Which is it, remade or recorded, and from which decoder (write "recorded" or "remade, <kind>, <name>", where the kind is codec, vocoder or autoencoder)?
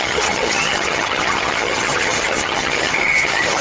remade, vocoder, HiFi-GAN